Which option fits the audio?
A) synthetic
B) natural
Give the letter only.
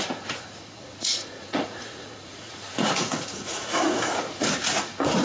A